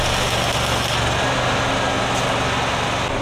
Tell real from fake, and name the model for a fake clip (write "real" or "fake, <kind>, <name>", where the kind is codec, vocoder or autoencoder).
real